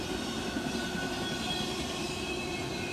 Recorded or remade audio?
recorded